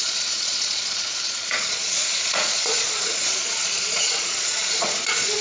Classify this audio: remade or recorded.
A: remade